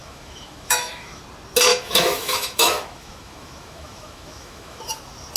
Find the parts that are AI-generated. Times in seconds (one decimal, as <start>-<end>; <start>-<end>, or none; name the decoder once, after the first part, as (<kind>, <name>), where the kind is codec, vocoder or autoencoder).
0.0-1.2 (autoencoder, DAC-VAE); 1.7-4.8